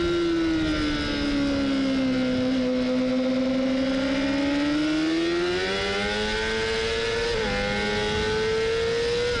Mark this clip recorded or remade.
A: recorded